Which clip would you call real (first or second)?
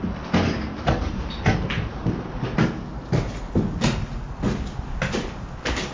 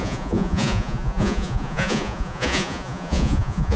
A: first